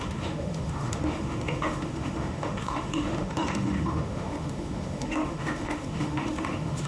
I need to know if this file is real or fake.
fake